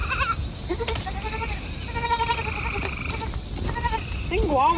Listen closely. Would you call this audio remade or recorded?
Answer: recorded